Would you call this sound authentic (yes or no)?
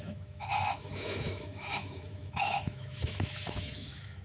no